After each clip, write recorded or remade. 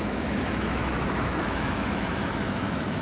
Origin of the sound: remade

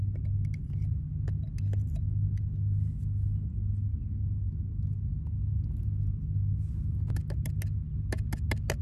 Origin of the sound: recorded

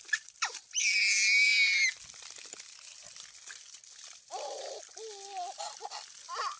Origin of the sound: recorded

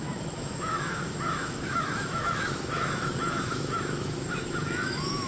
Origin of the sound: remade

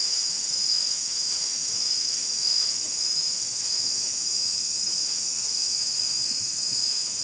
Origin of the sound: remade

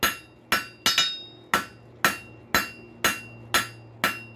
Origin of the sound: recorded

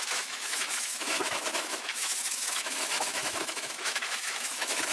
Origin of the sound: remade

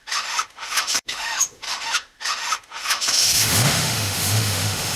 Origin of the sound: remade